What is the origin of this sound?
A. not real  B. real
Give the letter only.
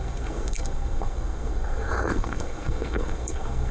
A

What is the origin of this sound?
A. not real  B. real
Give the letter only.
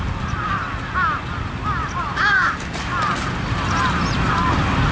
B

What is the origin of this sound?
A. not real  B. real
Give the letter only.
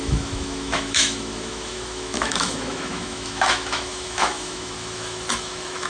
A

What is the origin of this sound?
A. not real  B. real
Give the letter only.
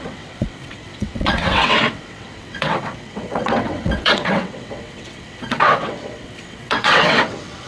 A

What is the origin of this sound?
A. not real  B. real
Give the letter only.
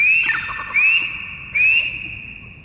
B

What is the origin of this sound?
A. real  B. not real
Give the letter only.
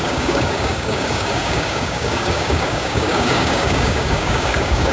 B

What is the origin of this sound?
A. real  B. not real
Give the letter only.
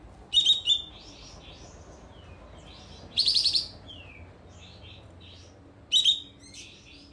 A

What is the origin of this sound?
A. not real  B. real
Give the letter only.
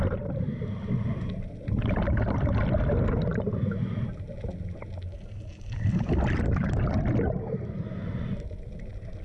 B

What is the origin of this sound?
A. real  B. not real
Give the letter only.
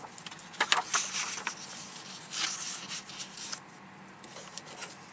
A